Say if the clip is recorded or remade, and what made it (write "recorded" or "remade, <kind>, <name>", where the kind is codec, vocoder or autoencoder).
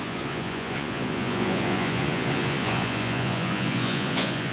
remade, vocoder, Vocos